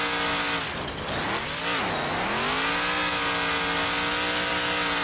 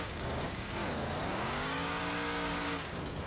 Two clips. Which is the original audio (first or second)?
first